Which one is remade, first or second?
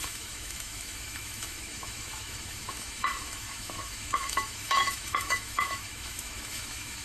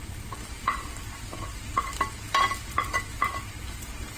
first